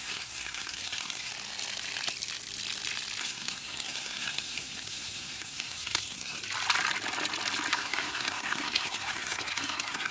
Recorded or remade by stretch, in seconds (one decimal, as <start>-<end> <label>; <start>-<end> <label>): 0.0-1.3 remade; 1.3-3.2 recorded; 3.2-6.4 remade; 6.4-7.7 recorded; 7.7-10.1 remade

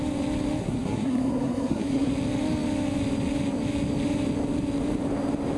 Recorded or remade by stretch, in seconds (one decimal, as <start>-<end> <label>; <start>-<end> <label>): 0.0-0.6 recorded; 0.6-2.1 remade; 2.1-5.6 recorded

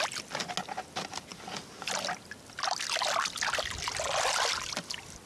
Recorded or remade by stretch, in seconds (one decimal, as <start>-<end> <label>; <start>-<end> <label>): 0.0-5.3 recorded

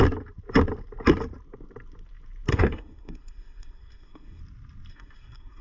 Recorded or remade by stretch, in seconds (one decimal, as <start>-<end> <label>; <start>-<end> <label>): 0.0-2.5 recorded; 2.5-4.4 remade; 4.4-4.9 recorded; 4.9-5.6 remade

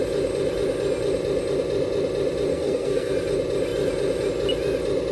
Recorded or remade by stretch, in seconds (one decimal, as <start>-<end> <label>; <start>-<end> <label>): 0.0-2.5 recorded; 2.5-3.1 remade; 3.1-5.1 recorded